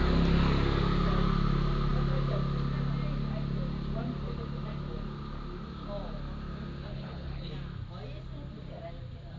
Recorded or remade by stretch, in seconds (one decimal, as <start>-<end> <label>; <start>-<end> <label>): 0.0-6.9 recorded; 6.9-7.5 remade; 7.5-9.4 recorded